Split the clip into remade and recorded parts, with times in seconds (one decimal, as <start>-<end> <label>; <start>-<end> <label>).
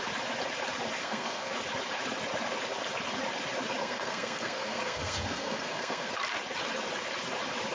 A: 0.0-1.0 recorded; 1.0-1.5 remade; 1.5-3.8 recorded; 3.8-6.1 remade; 6.1-7.7 recorded